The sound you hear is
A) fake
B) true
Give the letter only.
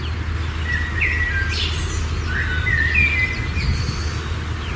B